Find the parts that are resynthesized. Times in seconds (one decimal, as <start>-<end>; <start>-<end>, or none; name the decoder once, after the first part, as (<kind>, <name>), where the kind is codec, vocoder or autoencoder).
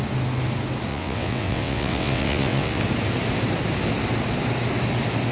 0.9-2.8 (vocoder, WaveNeXt)